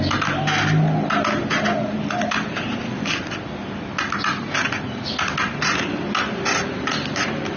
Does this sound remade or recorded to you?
recorded